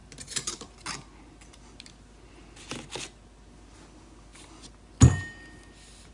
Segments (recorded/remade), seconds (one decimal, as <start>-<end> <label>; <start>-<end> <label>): 0.0-6.1 recorded